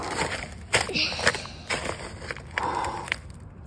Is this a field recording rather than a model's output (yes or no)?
yes